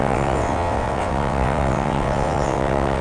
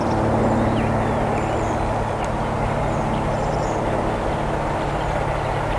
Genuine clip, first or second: second